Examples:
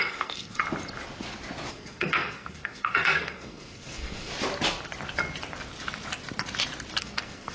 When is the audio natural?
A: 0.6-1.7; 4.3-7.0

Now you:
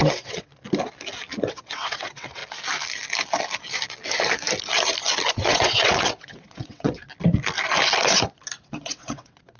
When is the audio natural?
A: 0.5-1.5; 2.4-5.3; 7.0-8.6

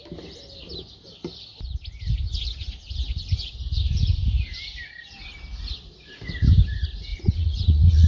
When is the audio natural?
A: 0.0-7.1

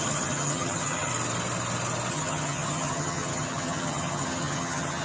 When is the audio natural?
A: 1.1-2.1